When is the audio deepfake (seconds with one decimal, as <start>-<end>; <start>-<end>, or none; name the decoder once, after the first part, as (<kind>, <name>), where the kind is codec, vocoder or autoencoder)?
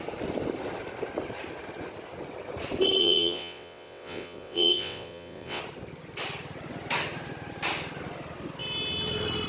3.0-5.6 (vocoder, WaveNeXt)